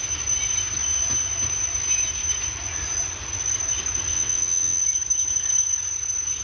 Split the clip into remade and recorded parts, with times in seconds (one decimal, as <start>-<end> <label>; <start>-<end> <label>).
0.0-4.1 recorded; 4.1-4.8 remade; 4.8-6.4 recorded